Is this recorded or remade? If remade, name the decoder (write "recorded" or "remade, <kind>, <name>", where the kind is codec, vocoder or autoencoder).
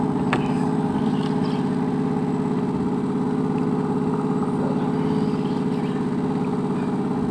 recorded